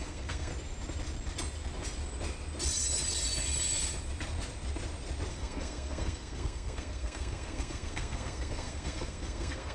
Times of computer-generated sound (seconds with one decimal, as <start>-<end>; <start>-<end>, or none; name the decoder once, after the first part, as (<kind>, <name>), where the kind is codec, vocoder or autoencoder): 0.0-0.5 (codec, SNAC); 5.3-9.7